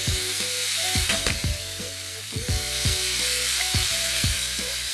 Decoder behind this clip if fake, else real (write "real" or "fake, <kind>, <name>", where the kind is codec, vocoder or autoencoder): fake, codec, SNAC